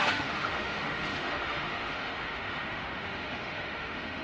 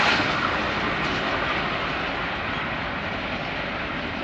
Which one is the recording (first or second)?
second